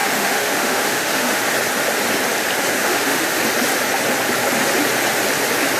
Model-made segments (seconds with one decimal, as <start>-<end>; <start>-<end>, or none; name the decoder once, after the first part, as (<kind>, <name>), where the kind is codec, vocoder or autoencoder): 0.0-1.4 (autoencoder, DAC-VAE); 2.8-3.4